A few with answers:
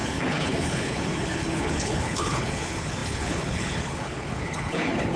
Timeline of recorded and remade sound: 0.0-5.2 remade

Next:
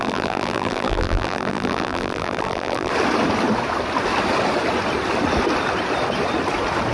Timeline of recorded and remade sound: 0.0-2.9 remade; 2.9-6.9 recorded

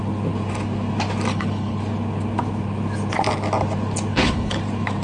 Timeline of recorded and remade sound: 0.0-1.3 recorded; 1.3-1.8 remade; 1.8-4.1 recorded; 4.1-4.6 remade; 4.6-5.0 recorded